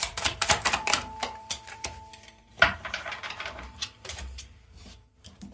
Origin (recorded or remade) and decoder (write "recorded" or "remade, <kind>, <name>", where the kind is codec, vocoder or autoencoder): remade, vocoder, BigVGAN v2